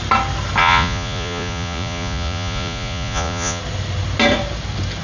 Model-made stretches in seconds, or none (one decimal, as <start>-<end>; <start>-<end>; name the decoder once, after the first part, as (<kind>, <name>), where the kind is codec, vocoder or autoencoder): 0.6-3.6 (vocoder, Vocos)